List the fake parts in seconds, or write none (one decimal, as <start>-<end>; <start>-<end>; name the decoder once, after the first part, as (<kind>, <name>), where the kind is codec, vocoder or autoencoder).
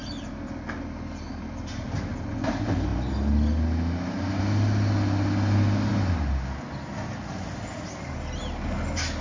none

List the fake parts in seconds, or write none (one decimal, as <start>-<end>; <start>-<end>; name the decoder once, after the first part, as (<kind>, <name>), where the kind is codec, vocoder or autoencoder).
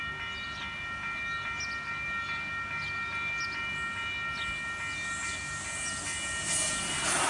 none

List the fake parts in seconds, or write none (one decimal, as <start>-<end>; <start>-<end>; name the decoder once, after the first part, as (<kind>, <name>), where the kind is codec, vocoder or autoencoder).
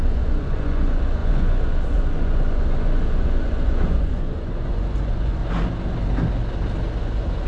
0.0-5.4 (vocoder, Vocos); 7.0-7.5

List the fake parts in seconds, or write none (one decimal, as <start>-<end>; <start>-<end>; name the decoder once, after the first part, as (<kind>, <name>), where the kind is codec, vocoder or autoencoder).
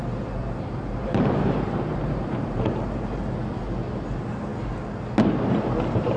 0.4-2.8 (vocoder, BigVGAN v2)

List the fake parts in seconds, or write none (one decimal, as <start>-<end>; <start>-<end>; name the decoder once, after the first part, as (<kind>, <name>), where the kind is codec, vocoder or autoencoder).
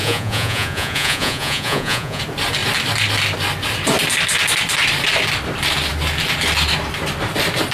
0.0-2.2 (vocoder, Vocos)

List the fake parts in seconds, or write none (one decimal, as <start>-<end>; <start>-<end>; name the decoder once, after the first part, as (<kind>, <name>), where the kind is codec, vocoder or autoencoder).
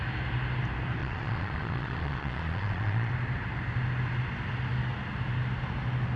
1.0-3.1 (vocoder, Vocos)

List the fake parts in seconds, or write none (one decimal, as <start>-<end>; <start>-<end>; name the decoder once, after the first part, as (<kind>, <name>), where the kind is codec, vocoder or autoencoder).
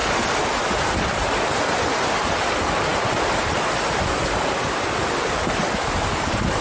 none